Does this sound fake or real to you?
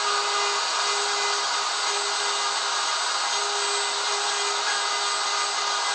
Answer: real